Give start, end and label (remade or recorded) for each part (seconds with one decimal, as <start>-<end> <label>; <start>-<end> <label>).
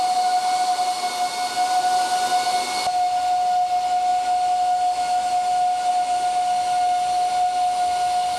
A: 0.0-8.4 recorded